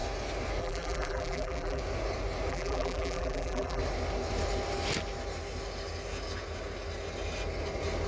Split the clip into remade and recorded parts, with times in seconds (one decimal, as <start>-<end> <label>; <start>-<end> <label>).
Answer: 0.0-0.6 recorded; 0.6-1.8 remade; 1.8-2.5 recorded; 2.5-3.8 remade; 3.8-8.1 recorded